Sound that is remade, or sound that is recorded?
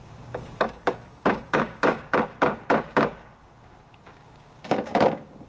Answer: remade